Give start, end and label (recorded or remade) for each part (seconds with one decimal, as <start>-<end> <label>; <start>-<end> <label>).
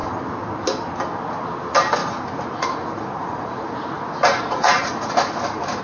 0.0-2.0 recorded; 2.0-5.8 remade